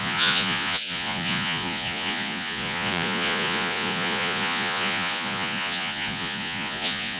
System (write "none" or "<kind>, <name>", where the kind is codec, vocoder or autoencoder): vocoder, Vocos